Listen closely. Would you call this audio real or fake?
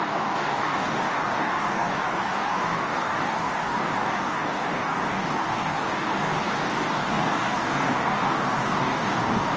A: fake